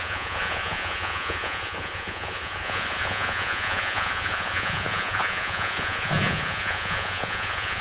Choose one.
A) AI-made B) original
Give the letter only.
A